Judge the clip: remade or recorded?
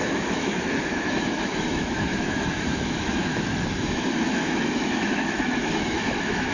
remade